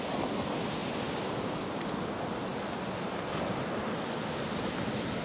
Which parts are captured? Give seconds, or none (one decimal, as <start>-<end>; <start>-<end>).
0.0-0.8; 1.9-5.2